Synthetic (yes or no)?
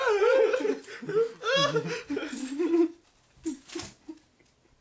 no